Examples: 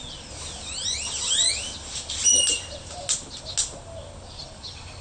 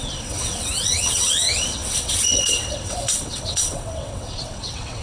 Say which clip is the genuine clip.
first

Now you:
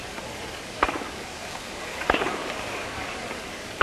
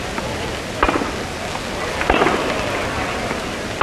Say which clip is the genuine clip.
second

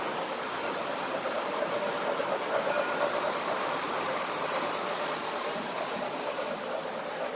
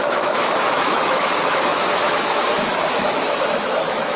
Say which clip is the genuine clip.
first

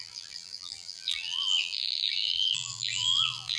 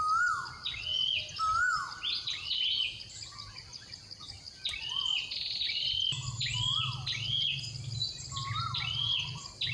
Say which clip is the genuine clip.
second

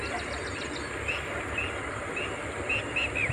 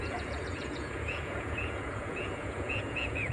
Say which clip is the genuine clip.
first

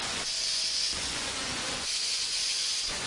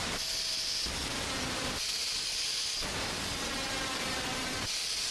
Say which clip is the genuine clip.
second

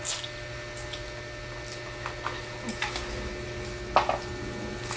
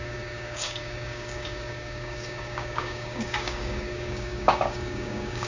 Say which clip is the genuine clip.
first